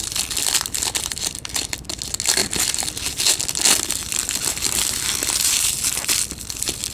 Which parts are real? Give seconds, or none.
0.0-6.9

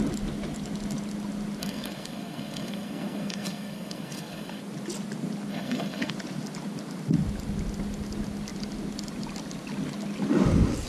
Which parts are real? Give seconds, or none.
0.0-1.6; 4.6-5.5; 6.1-10.9

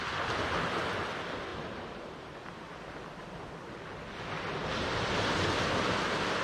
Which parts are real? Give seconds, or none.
0.0-1.5; 2.4-6.4

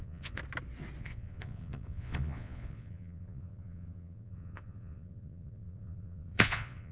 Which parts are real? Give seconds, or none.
0.4-1.0

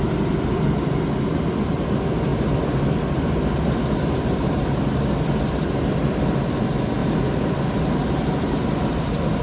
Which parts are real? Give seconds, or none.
0.0-9.4

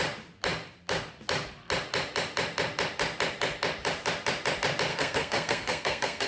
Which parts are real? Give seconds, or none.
0.0-4.9

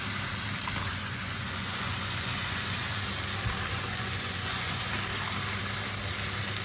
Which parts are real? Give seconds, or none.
0.0-0.9; 2.9-3.7; 4.9-6.6